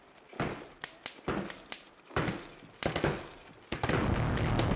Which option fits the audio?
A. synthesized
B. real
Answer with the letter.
B